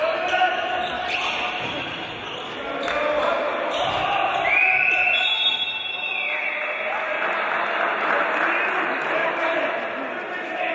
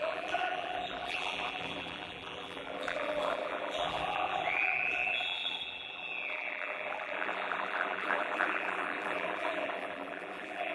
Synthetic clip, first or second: second